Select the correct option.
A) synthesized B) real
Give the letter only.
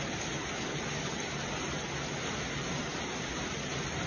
B